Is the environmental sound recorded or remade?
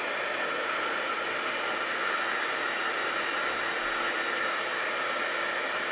recorded